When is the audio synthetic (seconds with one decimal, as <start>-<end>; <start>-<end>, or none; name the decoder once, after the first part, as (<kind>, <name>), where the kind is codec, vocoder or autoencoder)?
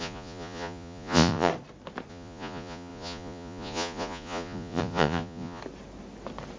0.0-1.5 (vocoder, Vocos); 2.1-5.6